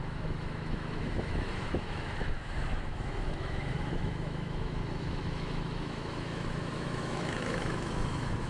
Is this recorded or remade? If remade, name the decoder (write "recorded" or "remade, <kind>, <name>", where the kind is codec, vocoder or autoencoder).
remade, autoencoder, DAC-VAE